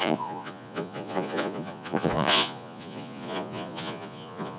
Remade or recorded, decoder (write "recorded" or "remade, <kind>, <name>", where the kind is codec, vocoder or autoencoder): remade, vocoder, Vocos